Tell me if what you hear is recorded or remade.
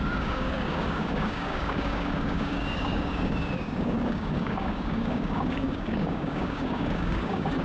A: remade